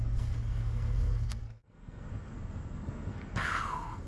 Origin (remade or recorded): remade